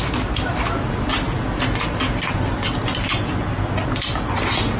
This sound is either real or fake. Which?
real